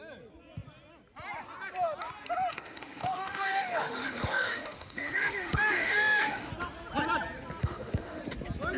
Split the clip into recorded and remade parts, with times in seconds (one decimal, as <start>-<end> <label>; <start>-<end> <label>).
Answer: 0.0-2.5 recorded; 2.5-6.5 remade; 6.5-7.6 recorded; 7.6-8.2 remade; 8.2-8.8 recorded